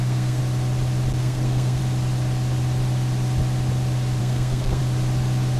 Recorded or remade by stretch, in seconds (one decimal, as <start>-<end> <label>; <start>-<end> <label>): 0.0-0.4 remade; 0.4-1.2 recorded; 1.2-1.8 remade; 1.8-4.2 recorded; 4.2-4.8 remade; 4.8-5.6 recorded